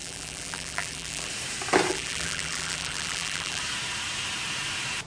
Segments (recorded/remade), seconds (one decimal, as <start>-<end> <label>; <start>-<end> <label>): 0.0-1.3 remade; 1.3-1.9 recorded; 1.9-3.6 remade; 3.6-5.1 recorded